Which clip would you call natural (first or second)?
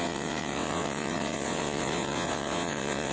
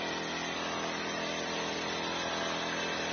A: second